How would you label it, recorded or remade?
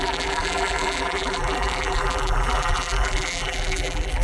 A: remade